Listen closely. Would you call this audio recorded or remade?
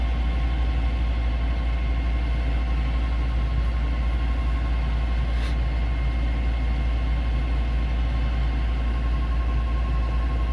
recorded